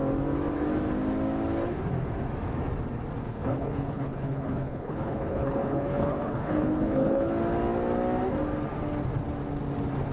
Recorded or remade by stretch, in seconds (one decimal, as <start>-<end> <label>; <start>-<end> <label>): 0.0-3.2 recorded; 3.2-7.3 remade; 7.3-10.1 recorded